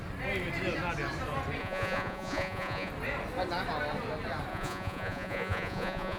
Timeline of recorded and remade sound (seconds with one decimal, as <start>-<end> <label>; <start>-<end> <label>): 0.0-1.6 recorded; 1.6-2.9 remade; 2.9-4.5 recorded; 4.5-6.2 remade